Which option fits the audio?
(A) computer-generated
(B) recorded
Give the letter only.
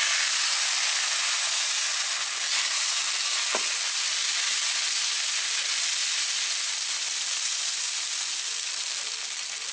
B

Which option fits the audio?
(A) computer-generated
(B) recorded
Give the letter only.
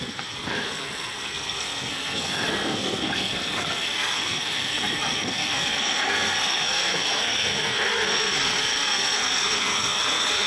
A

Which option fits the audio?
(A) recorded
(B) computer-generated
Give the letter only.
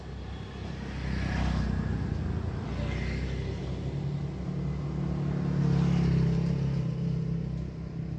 A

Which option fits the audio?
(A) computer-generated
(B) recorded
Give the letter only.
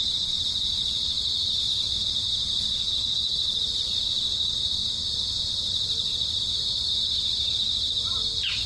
B